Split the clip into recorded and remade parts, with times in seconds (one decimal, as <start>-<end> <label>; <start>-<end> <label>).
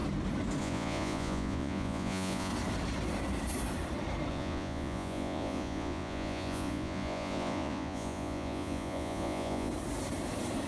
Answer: 0.0-0.6 recorded; 0.6-2.5 remade; 2.5-4.3 recorded; 4.3-9.7 remade; 9.7-10.7 recorded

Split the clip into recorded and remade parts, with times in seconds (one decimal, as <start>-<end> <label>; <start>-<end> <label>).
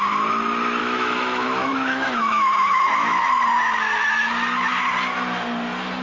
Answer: 0.0-0.8 recorded; 0.8-3.3 remade; 3.3-6.0 recorded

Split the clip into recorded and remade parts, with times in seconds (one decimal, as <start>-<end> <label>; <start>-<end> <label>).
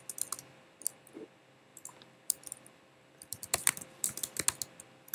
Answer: 0.0-1.7 recorded; 1.7-4.1 remade; 4.1-5.1 recorded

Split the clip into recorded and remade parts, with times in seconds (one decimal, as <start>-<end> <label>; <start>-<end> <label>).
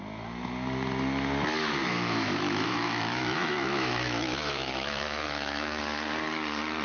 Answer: 0.0-1.8 recorded; 1.8-5.8 remade; 5.8-6.8 recorded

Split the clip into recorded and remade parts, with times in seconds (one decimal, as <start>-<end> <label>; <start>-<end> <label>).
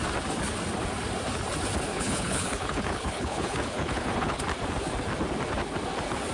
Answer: 0.0-1.9 recorded; 1.9-4.4 remade; 4.4-6.3 recorded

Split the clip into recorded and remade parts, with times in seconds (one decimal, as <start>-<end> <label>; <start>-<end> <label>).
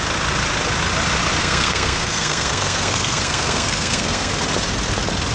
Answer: 0.0-1.4 recorded; 1.4-4.3 remade; 4.3-5.3 recorded